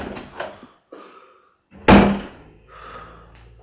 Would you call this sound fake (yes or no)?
no